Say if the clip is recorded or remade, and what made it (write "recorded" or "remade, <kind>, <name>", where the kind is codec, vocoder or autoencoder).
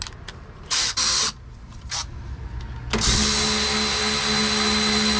recorded